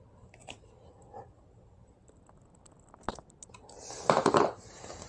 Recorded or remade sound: recorded